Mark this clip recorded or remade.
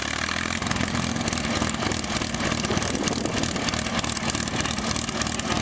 recorded